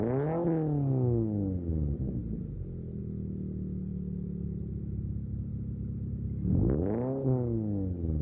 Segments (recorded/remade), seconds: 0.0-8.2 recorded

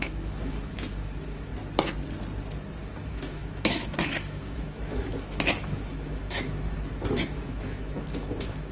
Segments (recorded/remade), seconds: 0.0-1.5 remade; 1.5-2.8 recorded; 2.8-8.7 remade